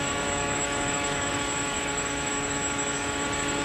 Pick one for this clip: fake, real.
fake